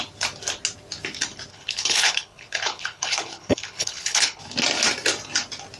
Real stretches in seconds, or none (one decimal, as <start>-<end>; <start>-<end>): 0.0-1.5; 4.4-5.8